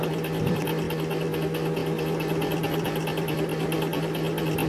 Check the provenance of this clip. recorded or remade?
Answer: recorded